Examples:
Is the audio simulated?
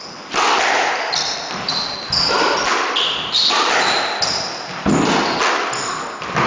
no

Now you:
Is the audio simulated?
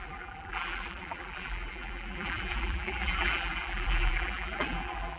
yes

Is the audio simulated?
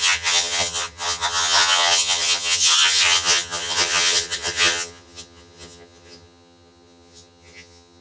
yes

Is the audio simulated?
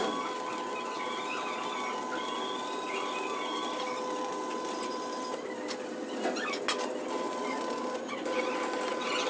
no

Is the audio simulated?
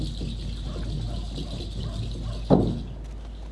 no